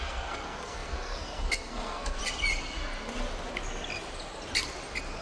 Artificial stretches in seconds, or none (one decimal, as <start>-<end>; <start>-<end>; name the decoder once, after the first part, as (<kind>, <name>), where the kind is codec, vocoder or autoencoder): 0.0-2.2 (codec, SNAC)